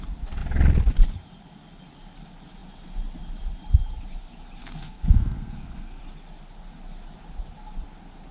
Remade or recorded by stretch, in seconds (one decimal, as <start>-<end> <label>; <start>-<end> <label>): 0.0-4.6 recorded; 4.6-6.0 remade; 6.0-8.3 recorded